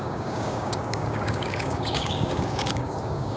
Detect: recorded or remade remade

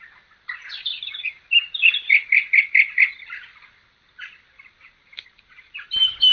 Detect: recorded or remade recorded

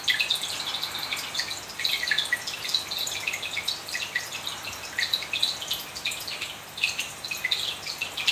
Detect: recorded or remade recorded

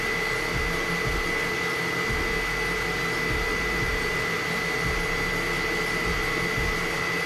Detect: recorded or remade recorded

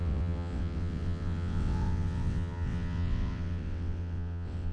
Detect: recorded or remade remade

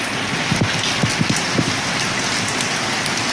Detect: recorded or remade recorded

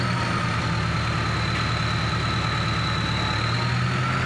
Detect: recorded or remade recorded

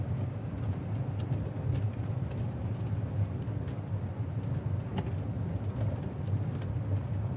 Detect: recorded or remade recorded